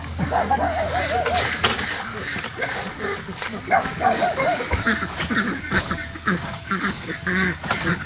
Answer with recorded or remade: remade